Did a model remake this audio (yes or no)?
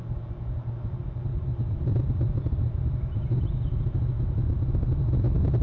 no